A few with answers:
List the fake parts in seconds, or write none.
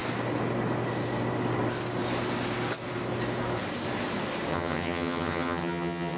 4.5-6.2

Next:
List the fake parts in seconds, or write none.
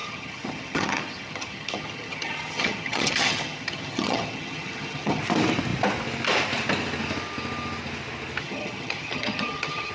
0.0-5.2; 8.4-9.9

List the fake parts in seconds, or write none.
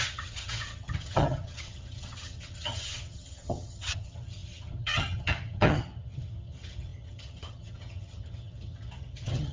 0.0-9.5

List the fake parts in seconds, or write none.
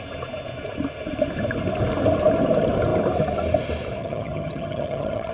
4.0-5.3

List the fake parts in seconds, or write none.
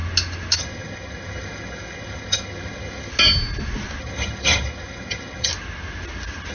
0.6-3.1; 4.0-5.5